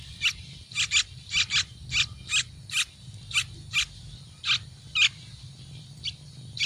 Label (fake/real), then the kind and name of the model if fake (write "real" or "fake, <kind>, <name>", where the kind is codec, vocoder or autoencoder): real